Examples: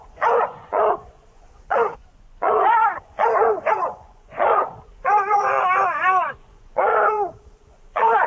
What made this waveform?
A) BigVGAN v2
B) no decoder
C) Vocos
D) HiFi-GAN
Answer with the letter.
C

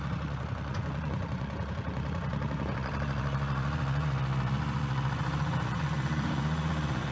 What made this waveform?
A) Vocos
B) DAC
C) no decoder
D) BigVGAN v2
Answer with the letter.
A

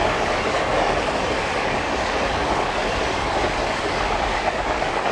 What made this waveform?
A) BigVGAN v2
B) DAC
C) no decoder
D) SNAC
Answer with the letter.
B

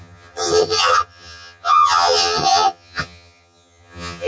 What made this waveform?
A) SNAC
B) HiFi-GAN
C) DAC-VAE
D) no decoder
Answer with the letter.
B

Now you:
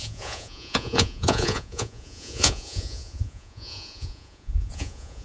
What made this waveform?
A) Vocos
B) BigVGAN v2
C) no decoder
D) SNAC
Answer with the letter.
A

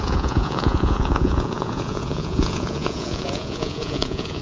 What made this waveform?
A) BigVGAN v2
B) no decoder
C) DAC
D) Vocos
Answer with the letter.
D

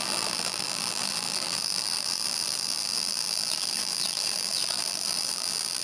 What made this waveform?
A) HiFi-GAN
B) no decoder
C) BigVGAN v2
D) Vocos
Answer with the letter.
C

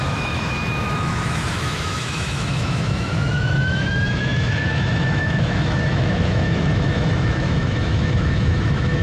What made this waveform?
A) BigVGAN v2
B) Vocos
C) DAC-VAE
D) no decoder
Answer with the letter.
C